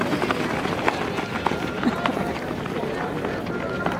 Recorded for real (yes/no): yes